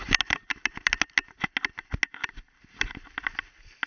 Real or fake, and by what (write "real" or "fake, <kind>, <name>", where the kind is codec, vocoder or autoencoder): real